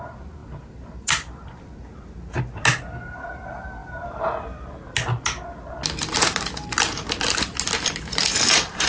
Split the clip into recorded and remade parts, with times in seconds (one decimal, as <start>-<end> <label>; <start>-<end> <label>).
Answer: 0.0-8.9 recorded